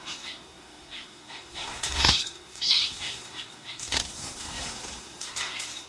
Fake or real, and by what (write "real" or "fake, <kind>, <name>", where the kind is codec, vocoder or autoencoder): fake, codec, SNAC